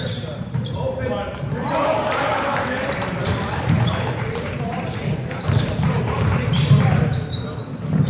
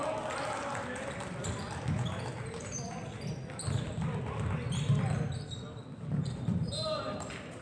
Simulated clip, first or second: first